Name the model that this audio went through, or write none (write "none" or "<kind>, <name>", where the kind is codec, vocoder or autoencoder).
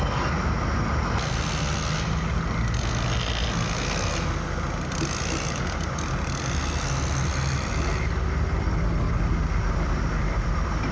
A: none